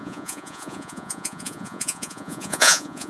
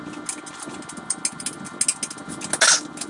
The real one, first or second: second